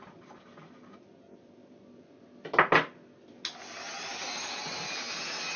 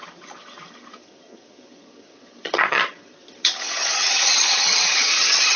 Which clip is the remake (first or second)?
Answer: second